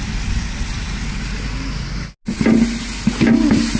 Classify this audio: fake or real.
real